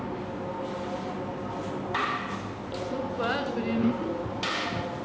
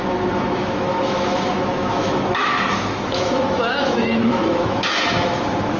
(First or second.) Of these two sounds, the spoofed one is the second